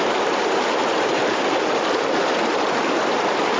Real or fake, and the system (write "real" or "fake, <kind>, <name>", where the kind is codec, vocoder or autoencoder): real